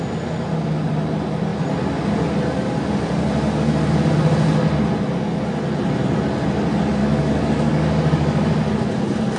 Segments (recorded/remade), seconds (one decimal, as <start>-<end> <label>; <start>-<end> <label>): 0.0-7.0 recorded; 7.0-8.8 remade; 8.8-9.4 recorded